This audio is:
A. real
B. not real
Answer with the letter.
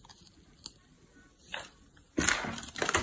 A